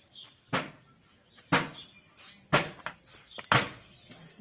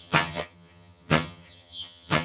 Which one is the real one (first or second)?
first